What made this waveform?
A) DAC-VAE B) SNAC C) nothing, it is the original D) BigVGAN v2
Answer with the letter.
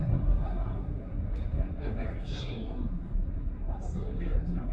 B